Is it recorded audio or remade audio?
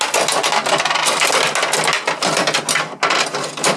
recorded